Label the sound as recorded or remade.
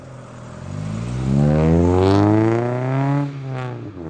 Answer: recorded